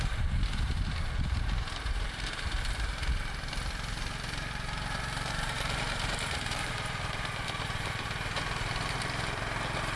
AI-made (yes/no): yes